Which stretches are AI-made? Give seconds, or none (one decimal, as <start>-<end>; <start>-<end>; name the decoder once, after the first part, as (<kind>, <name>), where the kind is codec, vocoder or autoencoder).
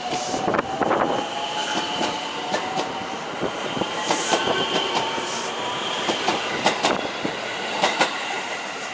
0.0-3.0 (vocoder, BigVGAN v2); 3.6-6.3; 7.7-8.9